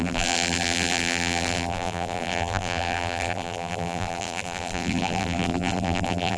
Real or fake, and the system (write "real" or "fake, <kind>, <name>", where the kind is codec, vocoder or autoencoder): fake, vocoder, BigVGAN v2